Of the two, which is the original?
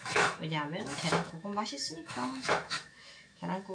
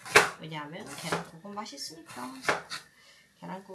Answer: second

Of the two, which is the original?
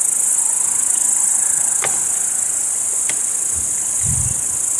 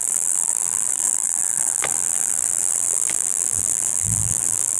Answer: first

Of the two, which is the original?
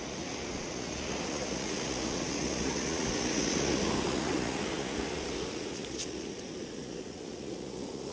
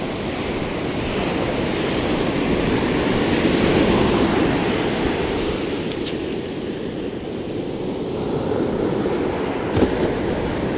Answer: second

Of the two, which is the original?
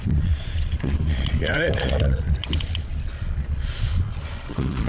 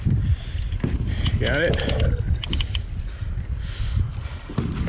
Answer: second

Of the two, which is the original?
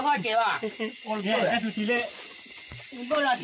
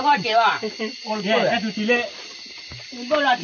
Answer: second